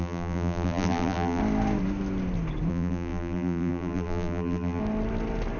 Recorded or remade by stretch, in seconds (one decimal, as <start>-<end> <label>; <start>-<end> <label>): 0.0-1.4 remade; 1.4-2.7 recorded; 2.7-4.8 remade; 4.8-5.6 recorded